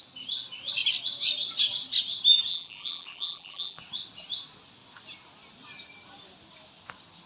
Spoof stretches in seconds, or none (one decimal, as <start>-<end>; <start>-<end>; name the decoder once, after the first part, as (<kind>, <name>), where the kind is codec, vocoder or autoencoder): 2.5-3.8 (vocoder, BigVGAN v2)

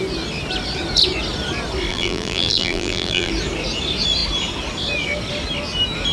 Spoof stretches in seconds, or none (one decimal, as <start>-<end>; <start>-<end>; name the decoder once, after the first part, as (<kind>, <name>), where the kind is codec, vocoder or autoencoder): 1.9-3.3 (vocoder, BigVGAN v2)

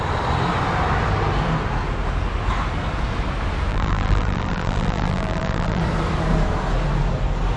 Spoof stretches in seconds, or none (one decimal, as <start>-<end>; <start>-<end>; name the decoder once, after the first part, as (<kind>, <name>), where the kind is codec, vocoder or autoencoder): 3.7-5.8 (vocoder, BigVGAN v2)

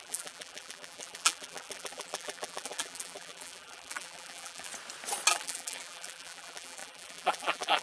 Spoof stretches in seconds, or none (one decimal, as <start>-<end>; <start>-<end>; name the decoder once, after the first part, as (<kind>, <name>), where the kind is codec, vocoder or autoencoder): 0.0-4.7 (vocoder, BigVGAN v2); 5.3-7.8